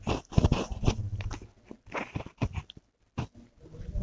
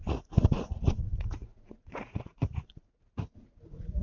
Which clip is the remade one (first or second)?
second